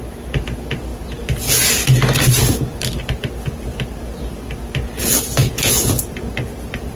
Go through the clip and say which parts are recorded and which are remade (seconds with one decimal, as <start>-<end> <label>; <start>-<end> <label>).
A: 0.0-5.4 recorded; 5.4-6.1 remade; 6.1-6.9 recorded